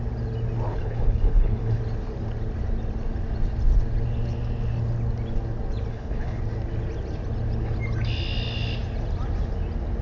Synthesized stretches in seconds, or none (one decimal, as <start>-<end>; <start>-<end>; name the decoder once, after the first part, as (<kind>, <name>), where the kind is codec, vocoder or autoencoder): 0.7-1.8 (codec, HILCodec); 5.9-6.4